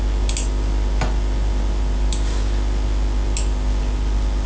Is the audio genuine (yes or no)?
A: yes